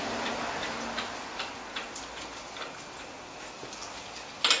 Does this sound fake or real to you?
real